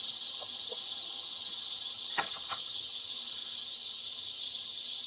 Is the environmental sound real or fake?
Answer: fake